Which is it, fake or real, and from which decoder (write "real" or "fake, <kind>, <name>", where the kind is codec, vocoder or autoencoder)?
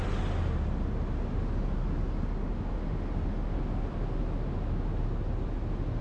real